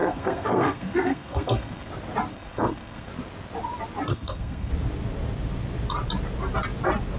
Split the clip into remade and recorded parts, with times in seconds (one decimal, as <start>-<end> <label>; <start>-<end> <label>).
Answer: 0.0-1.9 remade; 1.9-2.3 recorded; 2.3-3.1 remade; 3.1-4.1 recorded; 4.1-4.7 remade; 4.7-7.2 recorded